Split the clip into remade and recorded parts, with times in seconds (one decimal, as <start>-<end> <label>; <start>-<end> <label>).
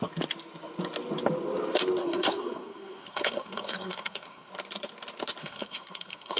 0.0-2.0 recorded; 2.0-4.5 remade; 4.5-5.4 recorded; 5.4-6.4 remade